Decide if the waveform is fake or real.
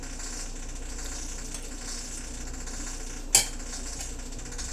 real